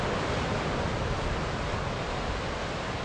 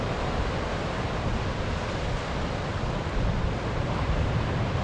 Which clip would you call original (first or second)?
first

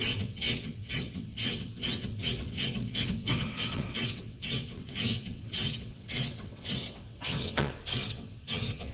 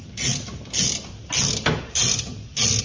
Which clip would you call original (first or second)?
second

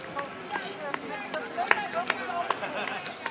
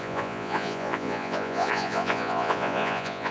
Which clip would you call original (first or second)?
first